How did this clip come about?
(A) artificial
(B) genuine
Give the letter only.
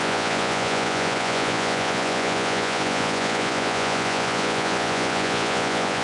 A